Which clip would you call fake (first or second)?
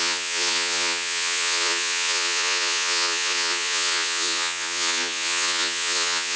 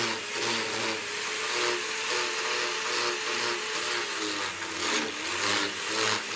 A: first